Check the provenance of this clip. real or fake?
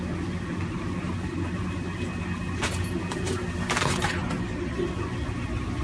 real